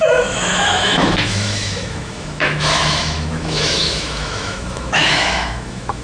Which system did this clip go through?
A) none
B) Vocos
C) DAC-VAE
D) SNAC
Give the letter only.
C